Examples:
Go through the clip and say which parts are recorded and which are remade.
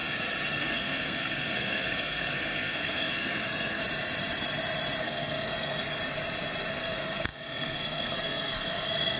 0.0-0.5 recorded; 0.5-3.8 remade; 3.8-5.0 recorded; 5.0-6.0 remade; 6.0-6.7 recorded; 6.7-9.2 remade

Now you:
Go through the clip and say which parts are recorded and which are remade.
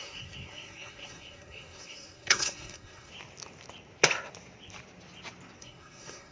0.0-3.1 remade; 3.1-5.6 recorded; 5.6-6.3 remade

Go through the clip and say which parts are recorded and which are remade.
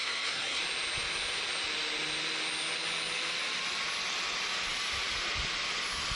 0.0-0.6 remade; 0.6-6.1 recorded